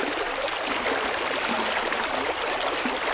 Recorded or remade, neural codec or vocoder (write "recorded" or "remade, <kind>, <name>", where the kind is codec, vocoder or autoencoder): recorded